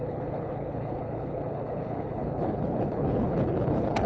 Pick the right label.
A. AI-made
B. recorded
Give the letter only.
A